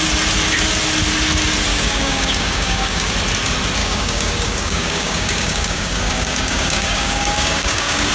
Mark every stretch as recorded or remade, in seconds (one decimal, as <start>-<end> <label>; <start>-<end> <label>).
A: 0.0-1.7 recorded; 1.7-3.1 remade; 3.1-3.8 recorded; 3.8-8.1 remade